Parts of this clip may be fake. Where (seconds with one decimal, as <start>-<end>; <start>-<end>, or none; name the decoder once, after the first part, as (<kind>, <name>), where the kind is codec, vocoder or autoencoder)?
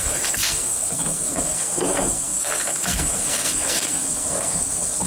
0.0-5.1 (codec, SNAC)